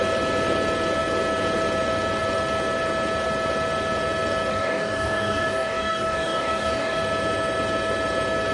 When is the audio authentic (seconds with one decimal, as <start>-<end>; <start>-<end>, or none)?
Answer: 0.0-4.5; 7.0-8.5